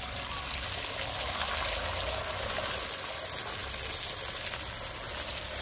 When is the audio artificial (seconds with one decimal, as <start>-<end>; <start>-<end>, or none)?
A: none